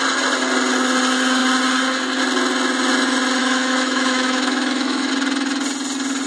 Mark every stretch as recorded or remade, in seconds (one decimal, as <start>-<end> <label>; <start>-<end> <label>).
0.0-3.4 recorded; 3.4-5.1 remade; 5.1-6.3 recorded